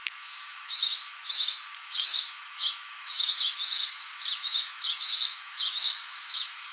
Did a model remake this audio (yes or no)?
yes